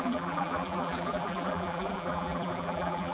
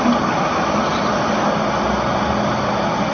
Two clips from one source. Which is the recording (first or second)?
second